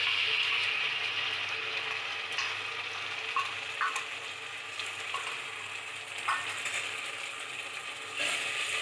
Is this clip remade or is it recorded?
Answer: recorded